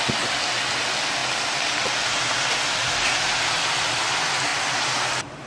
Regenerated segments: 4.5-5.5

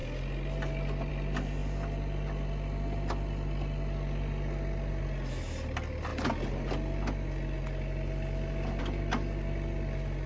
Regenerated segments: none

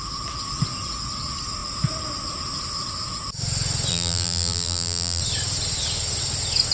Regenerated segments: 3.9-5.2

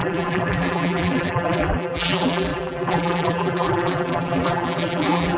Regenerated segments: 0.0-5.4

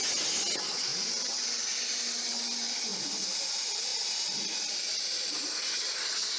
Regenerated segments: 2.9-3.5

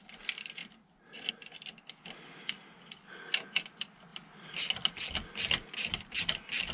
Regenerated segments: 0.6-1.3; 4.1-4.7

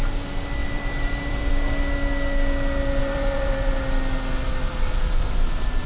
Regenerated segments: 0.6-1.5; 3.0-3.7